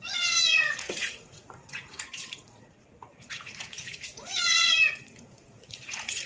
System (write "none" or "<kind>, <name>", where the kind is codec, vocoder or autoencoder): vocoder, Vocos